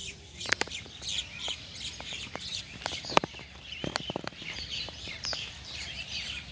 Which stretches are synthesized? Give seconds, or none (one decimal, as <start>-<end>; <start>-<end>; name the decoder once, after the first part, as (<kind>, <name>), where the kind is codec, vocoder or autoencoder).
0.0-0.7 (vocoder, BigVGAN v2); 2.5-6.5